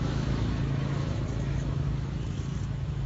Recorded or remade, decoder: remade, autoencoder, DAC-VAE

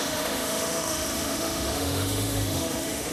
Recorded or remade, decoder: remade, autoencoder, DAC-VAE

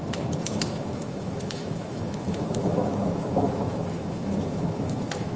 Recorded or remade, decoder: remade, autoencoder, DAC-VAE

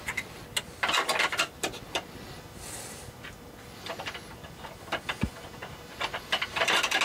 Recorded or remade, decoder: recorded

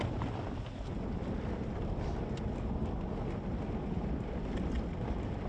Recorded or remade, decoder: recorded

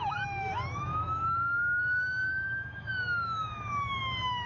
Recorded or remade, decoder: remade, autoencoder, DAC-VAE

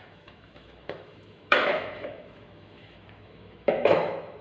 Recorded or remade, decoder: remade, autoencoder, DAC-VAE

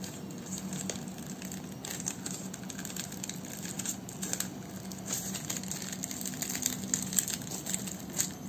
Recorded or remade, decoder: recorded